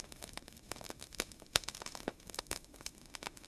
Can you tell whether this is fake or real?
fake